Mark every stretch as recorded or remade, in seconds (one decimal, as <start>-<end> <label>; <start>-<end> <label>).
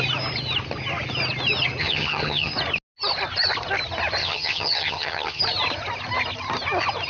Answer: 0.0-1.8 recorded; 1.8-2.5 remade; 2.5-4.2 recorded; 4.2-5.4 remade; 5.4-7.1 recorded